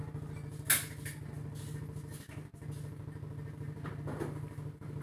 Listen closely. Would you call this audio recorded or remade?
recorded